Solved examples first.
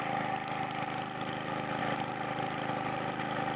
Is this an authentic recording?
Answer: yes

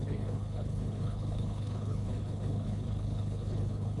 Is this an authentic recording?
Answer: no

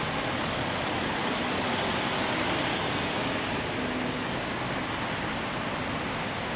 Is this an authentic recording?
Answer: yes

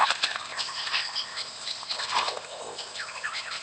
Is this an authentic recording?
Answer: no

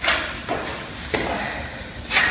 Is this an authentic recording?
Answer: yes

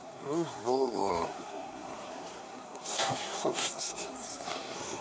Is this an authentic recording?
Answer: no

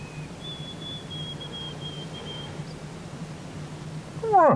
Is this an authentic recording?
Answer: yes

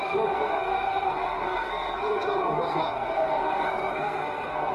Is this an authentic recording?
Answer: no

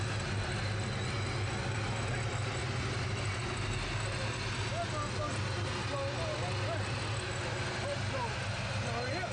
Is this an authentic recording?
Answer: yes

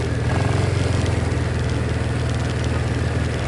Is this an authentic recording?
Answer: yes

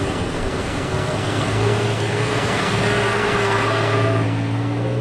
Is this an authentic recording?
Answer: no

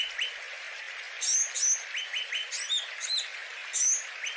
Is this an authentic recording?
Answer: yes